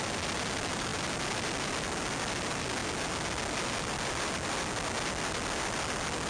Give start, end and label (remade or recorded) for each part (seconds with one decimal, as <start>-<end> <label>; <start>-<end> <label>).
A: 0.0-6.3 recorded